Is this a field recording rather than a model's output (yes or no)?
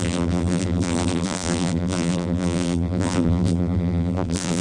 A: no